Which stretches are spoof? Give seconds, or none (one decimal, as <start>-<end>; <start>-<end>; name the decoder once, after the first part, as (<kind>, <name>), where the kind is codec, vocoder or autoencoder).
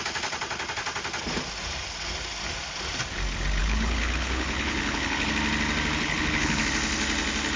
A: 3.6-5.3 (codec, HILCodec); 6.0-6.6